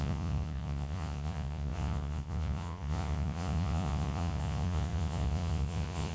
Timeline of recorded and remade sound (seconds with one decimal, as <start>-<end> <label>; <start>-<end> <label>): 0.0-6.1 remade